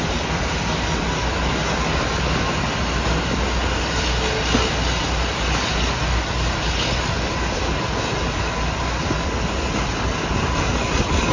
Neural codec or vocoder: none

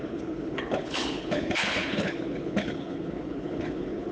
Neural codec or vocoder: codec, HILCodec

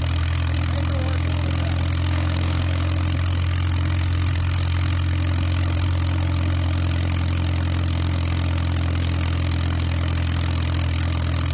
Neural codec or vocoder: none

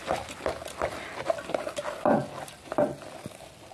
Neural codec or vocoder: none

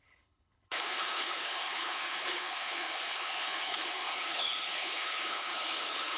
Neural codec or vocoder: codec, HILCodec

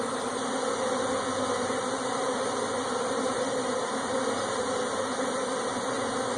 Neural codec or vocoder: none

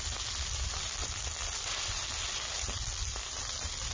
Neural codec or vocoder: none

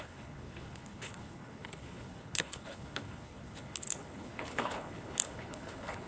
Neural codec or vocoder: codec, HILCodec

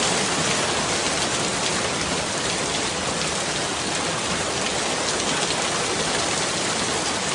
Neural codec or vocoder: none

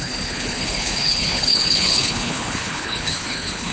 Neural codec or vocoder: codec, HILCodec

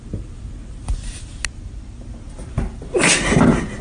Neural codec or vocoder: none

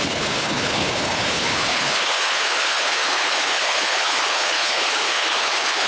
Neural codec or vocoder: codec, HILCodec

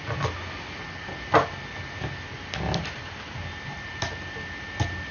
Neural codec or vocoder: none